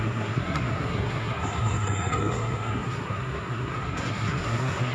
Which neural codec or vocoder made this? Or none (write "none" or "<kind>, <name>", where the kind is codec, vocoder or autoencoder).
codec, SNAC